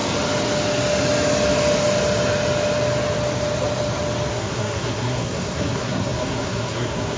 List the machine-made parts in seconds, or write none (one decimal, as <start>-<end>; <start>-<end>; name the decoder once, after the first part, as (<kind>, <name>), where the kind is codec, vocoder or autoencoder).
4.3-7.2 (codec, SNAC)